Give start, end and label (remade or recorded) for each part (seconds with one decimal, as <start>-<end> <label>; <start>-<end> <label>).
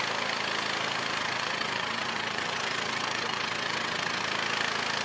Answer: 0.0-1.2 recorded; 1.2-4.2 remade; 4.2-5.0 recorded